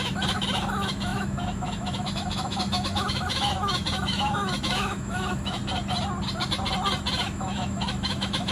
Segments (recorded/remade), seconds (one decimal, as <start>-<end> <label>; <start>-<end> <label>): 0.0-5.6 remade; 5.6-7.2 recorded; 7.2-8.5 remade